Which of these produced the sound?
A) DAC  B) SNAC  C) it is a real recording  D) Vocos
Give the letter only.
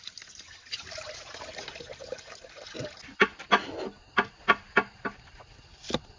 C